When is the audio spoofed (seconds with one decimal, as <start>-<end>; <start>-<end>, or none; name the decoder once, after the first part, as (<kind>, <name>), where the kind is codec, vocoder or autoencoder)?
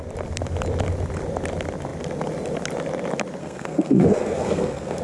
3.4-5.0 (codec, SNAC)